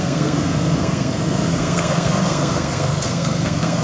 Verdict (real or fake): fake